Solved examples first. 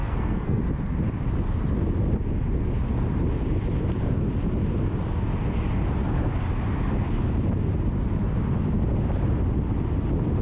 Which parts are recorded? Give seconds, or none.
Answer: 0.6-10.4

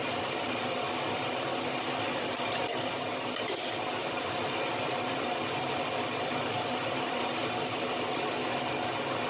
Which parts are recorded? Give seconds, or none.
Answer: 0.6-4.0; 7.2-9.3

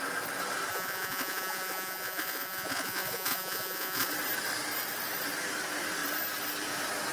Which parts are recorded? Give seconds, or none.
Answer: 0.0-0.7; 4.1-7.1

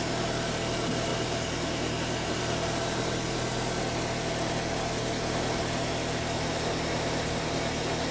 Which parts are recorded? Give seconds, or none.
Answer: 0.0-8.1

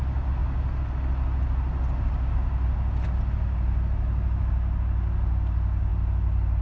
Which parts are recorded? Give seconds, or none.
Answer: 0.0-6.6

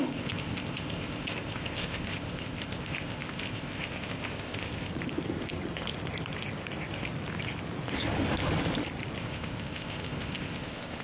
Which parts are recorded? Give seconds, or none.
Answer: 4.9-9.2

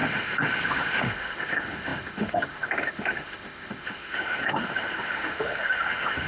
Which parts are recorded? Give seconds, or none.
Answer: none

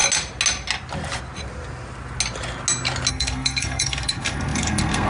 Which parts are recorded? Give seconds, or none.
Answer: 0.0-3.1